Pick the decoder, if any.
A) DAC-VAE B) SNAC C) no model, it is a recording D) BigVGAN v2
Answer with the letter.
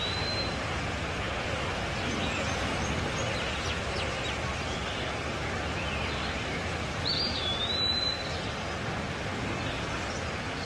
C